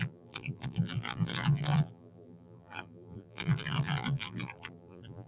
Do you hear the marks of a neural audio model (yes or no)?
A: yes